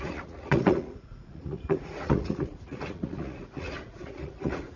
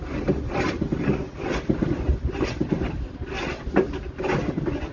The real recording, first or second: second